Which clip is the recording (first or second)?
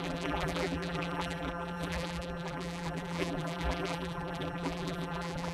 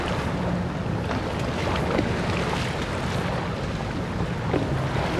second